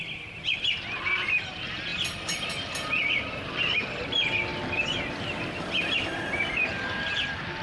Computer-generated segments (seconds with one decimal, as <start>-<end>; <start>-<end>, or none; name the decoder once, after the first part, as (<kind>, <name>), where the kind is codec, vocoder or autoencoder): 0.0-4.5 (vocoder, BigVGAN v2); 5.5-7.6

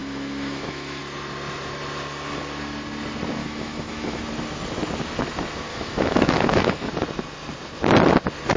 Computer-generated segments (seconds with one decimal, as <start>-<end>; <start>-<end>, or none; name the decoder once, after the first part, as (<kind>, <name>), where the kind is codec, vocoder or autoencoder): 0.0-1.0 (autoencoder, DAC-VAE); 3.4-4.2; 5.7-6.9

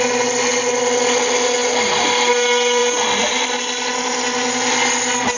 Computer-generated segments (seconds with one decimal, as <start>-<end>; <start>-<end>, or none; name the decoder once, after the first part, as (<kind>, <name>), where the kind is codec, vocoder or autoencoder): none

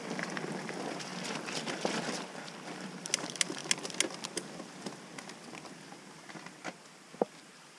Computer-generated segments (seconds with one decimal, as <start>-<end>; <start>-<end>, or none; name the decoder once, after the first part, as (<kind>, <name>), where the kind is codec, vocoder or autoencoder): none

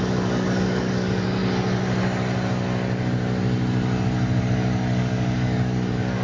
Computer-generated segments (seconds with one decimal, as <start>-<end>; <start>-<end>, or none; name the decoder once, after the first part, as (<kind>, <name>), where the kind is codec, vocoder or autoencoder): 0.0-1.4 (codec, DAC); 4.4-6.2